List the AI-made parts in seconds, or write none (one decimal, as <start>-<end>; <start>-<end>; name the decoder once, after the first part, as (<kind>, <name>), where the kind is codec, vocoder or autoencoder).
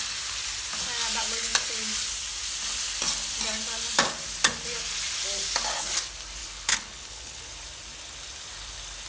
6.4-7.5 (codec, HILCodec)